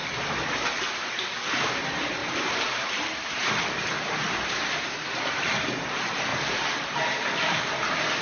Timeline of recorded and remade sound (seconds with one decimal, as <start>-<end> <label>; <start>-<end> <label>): 0.0-2.2 recorded; 2.2-3.5 remade; 3.5-6.3 recorded; 6.3-8.2 remade